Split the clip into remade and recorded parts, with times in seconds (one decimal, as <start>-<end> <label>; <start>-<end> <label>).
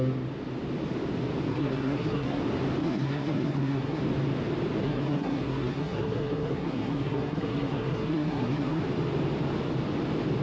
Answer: 0.0-1.5 recorded; 1.5-2.4 remade; 2.4-2.8 recorded; 2.8-4.0 remade; 4.0-4.8 recorded; 4.8-8.8 remade; 8.8-10.4 recorded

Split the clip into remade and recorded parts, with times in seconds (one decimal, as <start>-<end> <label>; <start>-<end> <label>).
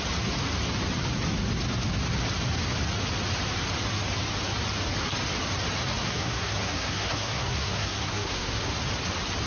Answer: 0.0-6.0 recorded; 6.0-8.6 remade; 8.6-9.5 recorded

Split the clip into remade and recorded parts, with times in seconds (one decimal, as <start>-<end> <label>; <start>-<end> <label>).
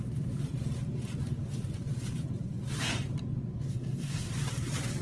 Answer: 0.0-3.7 recorded; 3.7-4.3 remade; 4.3-5.0 recorded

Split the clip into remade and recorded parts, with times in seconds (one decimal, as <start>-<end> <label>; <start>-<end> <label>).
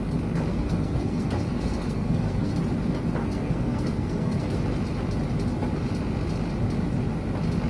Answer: 0.0-0.5 recorded; 0.5-2.5 remade; 2.5-3.2 recorded; 3.2-4.6 remade; 4.6-7.7 recorded